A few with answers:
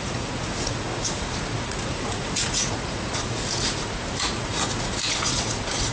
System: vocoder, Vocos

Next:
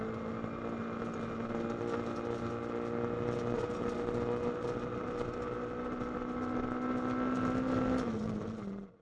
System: none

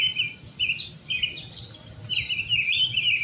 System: none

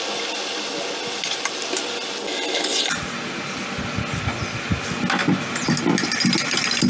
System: none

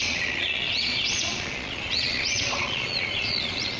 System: vocoder, Vocos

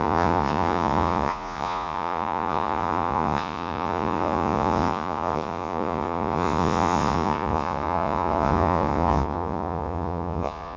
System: vocoder, Vocos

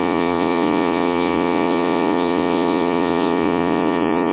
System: vocoder, Vocos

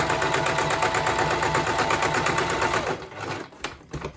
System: none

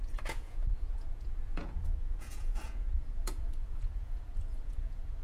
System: vocoder, Vocos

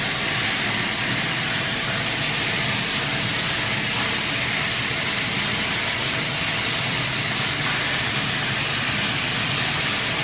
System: none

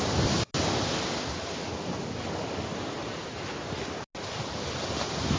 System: none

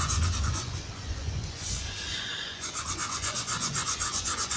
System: vocoder, Vocos